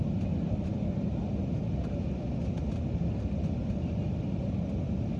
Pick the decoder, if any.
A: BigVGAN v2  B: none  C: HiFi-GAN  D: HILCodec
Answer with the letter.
B